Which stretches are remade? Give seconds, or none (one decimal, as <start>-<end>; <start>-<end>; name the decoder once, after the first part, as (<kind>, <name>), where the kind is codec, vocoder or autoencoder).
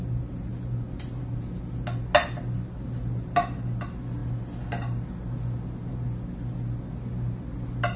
none